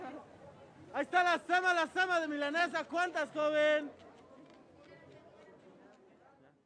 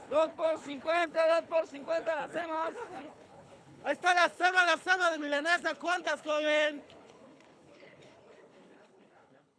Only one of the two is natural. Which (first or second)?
first